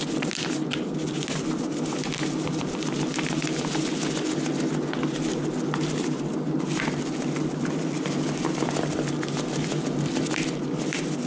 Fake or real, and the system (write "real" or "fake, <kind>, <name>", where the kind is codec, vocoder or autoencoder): real